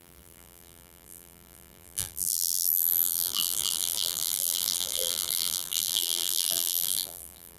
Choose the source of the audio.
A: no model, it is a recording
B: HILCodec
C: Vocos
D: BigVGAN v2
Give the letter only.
D